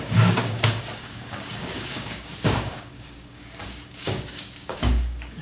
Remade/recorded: remade